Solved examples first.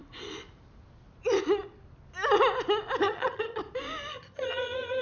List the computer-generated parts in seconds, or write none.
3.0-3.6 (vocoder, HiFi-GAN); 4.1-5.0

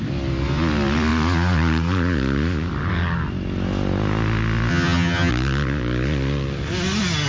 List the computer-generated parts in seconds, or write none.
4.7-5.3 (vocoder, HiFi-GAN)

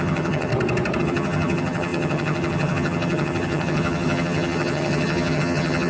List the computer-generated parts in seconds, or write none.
0.0-0.5 (vocoder, HiFi-GAN); 1.0-5.9

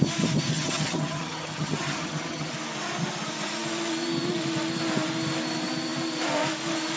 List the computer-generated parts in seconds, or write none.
0.5-2.5 (vocoder, HiFi-GAN)

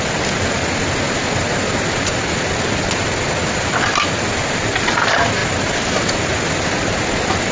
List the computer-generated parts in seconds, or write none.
none

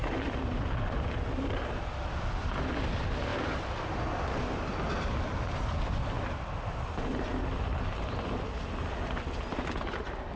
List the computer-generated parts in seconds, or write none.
none